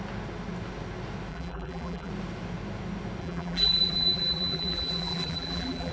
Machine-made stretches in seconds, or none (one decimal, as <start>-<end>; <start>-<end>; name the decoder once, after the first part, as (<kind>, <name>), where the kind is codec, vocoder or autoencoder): 1.3-2.1 (vocoder, BigVGAN v2); 3.2-5.9